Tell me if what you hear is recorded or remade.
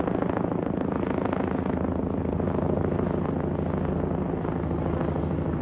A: recorded